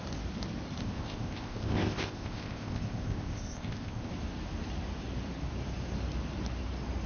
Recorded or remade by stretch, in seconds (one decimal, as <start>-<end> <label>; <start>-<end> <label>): 0.0-0.8 recorded; 0.8-4.1 remade; 4.1-7.1 recorded